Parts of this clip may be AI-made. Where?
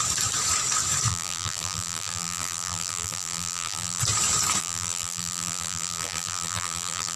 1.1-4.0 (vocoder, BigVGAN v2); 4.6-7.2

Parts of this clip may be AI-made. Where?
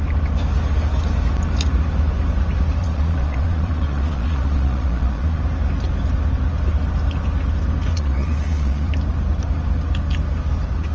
2.8-5.4 (vocoder, Vocos); 7.9-8.9